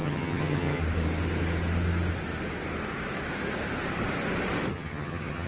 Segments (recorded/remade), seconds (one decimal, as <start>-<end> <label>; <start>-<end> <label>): 0.0-0.8 remade; 0.8-4.7 recorded; 4.7-5.5 remade